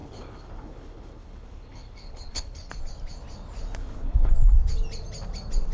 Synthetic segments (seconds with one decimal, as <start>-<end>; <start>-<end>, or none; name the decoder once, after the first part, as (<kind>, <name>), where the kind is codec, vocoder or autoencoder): 0.0-2.7 (codec, HILCodec); 3.8-4.3